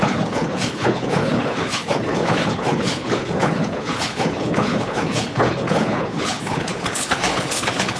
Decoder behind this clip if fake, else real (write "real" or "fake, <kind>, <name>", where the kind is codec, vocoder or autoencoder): fake, codec, HILCodec